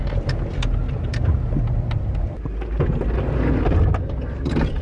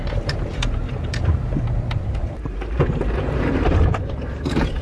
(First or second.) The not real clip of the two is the second